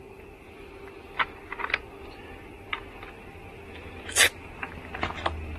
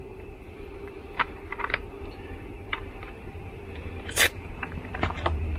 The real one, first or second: first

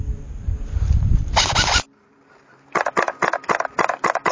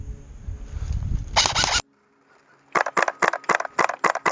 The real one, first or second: second